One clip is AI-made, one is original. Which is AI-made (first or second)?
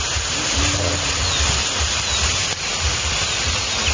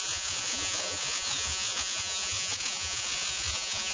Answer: second